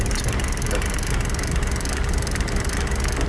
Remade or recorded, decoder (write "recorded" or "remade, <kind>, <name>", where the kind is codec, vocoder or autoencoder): recorded